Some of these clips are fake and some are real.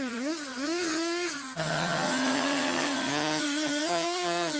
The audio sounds fake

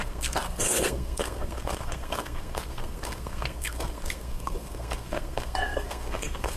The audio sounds fake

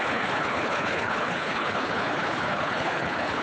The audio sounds fake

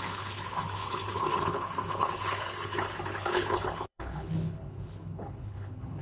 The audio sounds fake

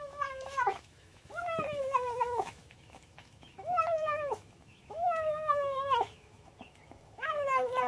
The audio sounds fake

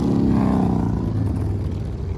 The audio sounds real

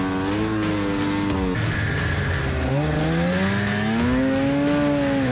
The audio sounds real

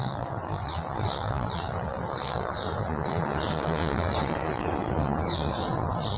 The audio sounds fake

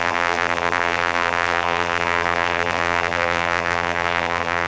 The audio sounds fake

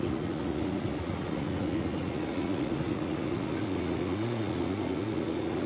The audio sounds fake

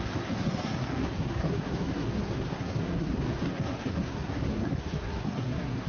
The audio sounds fake